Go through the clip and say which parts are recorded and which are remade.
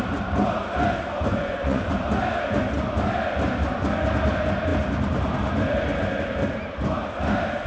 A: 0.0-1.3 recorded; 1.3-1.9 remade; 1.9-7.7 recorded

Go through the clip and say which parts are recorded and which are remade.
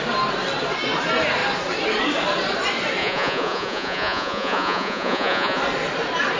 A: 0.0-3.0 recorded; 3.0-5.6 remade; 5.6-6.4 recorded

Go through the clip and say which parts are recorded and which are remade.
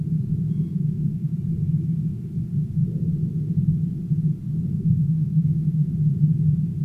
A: 0.0-0.7 recorded; 0.7-1.3 remade; 1.3-4.7 recorded; 4.7-5.9 remade; 5.9-6.8 recorded